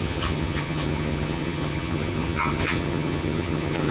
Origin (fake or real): fake